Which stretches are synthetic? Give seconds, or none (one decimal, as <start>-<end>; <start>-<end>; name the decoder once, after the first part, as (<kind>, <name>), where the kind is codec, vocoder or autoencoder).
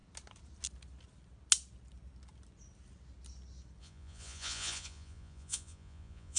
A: 3.8-6.4 (vocoder, Vocos)